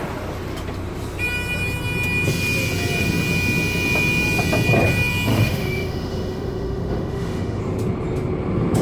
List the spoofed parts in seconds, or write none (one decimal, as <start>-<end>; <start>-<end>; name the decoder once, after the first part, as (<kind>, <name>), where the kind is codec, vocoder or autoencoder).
5.3-7.6 (autoencoder, DAC-VAE)